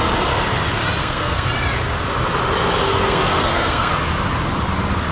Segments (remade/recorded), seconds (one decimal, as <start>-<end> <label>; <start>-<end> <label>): 0.0-1.0 recorded; 1.0-1.5 remade; 1.5-2.9 recorded; 2.9-3.9 remade; 3.9-5.1 recorded